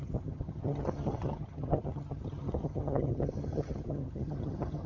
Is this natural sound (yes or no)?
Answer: no